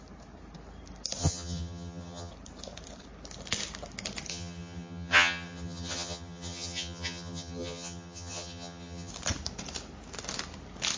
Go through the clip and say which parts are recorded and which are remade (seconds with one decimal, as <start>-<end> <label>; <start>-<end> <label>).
0.0-1.2 recorded; 1.2-2.3 remade; 2.3-4.3 recorded; 4.3-9.1 remade; 9.1-11.0 recorded